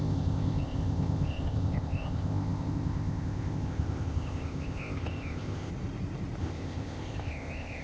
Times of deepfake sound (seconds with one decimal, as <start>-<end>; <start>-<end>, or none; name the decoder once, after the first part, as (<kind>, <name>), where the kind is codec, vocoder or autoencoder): 0.0-5.7 (codec, ZipCodec); 6.4-7.8

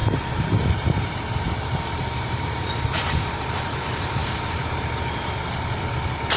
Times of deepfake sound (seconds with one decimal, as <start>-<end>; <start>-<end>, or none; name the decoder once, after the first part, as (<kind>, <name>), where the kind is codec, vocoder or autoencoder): 0.0-3.8 (vocoder, BigVGAN v2); 4.2-4.9